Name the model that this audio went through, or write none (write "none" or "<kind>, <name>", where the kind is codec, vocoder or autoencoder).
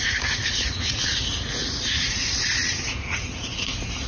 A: vocoder, Vocos